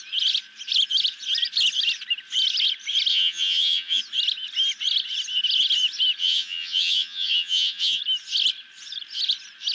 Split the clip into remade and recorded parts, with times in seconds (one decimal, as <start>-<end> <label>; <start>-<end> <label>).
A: 0.0-3.1 recorded; 3.1-4.0 remade; 4.0-6.2 recorded; 6.2-8.0 remade; 8.0-9.7 recorded